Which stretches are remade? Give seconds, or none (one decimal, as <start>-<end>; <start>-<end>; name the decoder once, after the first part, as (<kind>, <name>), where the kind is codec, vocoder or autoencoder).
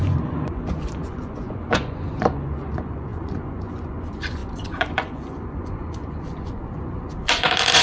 0.0-7.8 (vocoder, Vocos)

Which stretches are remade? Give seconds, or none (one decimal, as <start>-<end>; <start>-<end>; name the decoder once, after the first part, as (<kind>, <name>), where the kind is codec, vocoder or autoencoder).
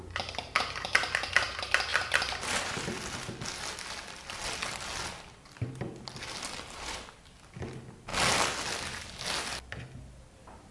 none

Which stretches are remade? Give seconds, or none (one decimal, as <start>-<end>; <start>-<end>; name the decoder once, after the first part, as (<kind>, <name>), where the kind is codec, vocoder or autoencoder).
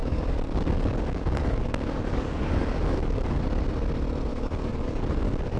0.0-3.4 (codec, DAC); 4.3-5.6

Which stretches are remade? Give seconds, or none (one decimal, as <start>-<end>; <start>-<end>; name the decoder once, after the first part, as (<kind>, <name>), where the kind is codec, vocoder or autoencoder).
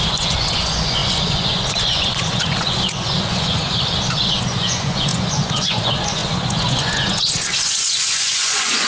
0.0-8.9 (vocoder, Vocos)